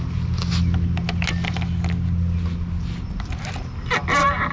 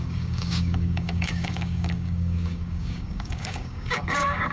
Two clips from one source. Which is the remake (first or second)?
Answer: second